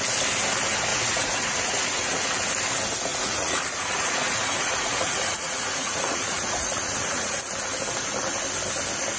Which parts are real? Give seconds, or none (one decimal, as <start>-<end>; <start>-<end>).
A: 0.0-0.9; 2.3-3.1; 7.5-9.2